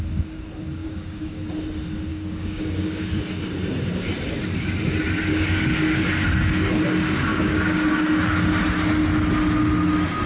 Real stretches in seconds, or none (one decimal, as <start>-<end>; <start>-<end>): 0.0-0.8; 1.5-2.1; 3.2-5.3; 6.0-7.3; 7.9-10.3